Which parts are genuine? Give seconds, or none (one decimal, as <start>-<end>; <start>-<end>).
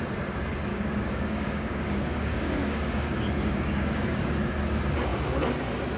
0.0-0.7; 4.3-6.0